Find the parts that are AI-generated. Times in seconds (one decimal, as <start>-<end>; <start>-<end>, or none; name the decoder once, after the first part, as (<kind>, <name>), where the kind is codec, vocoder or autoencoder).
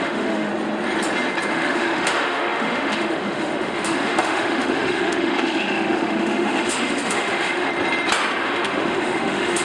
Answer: 0.0-0.5 (autoencoder, DAC-VAE); 1.5-7.7; 8.4-9.6